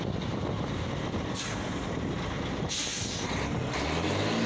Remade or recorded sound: recorded